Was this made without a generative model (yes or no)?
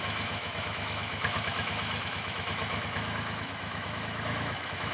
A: no